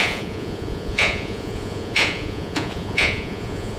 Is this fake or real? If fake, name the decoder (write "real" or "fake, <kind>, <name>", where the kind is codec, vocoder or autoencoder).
fake, vocoder, Vocos